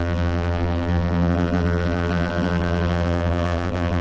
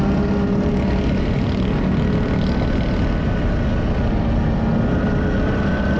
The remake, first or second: first